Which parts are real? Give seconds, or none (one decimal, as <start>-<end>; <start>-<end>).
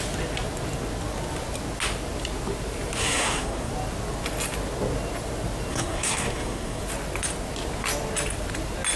0.0-3.0; 3.7-5.7; 6.8-9.0